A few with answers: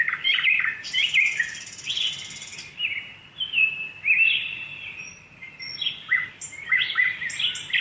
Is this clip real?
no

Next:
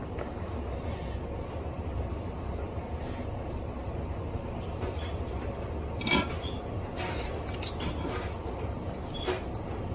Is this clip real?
yes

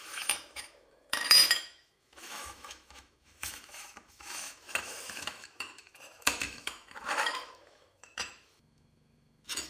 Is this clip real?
no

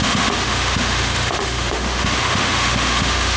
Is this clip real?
no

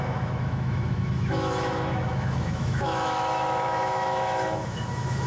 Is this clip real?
no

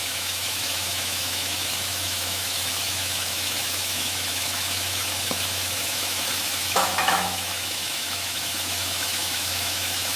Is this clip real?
no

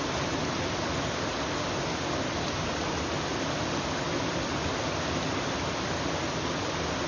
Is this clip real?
yes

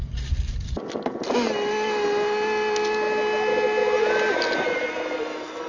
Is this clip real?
yes